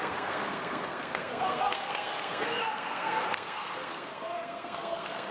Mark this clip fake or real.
fake